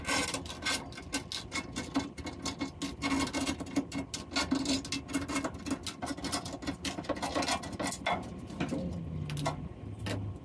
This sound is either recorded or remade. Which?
recorded